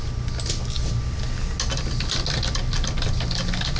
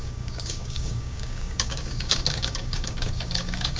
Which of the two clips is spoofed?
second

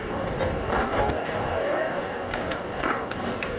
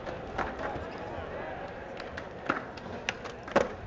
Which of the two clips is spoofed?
first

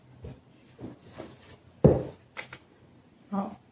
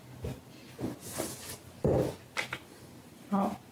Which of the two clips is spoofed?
first